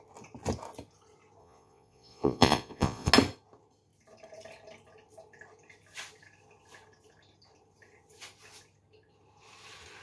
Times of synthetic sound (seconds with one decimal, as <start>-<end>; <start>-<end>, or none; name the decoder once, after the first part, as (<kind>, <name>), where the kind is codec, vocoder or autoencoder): 1.4-3.1 (vocoder, Vocos)